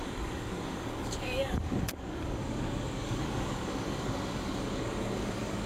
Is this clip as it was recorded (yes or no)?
no